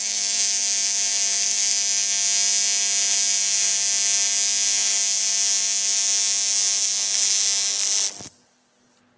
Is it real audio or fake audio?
real